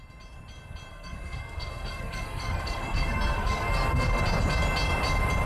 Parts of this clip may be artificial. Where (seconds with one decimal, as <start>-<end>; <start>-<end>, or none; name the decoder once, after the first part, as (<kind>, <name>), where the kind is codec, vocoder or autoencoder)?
0.9-4.2 (codec, SNAC)